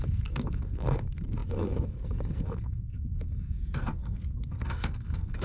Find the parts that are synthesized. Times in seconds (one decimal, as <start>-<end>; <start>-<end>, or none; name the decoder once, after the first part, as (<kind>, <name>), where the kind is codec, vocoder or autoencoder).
0.0-5.4 (codec, SNAC)